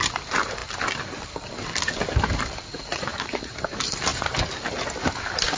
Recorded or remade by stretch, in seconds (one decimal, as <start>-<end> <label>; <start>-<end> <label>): 0.0-2.7 recorded; 2.7-3.5 remade; 3.5-5.6 recorded